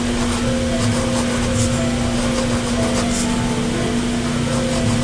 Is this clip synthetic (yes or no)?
no